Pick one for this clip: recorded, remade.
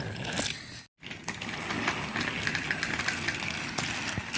recorded